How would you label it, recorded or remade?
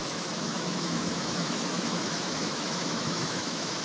remade